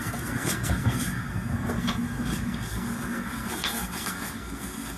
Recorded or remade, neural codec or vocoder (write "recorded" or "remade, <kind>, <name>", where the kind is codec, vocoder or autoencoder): remade, codec, SNAC